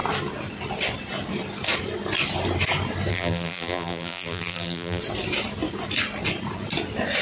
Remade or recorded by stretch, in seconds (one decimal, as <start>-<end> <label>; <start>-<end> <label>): 0.0-3.1 recorded; 3.1-5.0 remade; 5.0-7.2 recorded